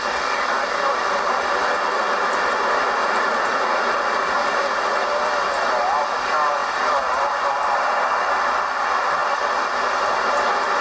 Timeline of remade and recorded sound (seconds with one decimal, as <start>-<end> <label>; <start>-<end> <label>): 0.0-3.0 recorded; 3.0-5.1 remade; 5.1-10.8 recorded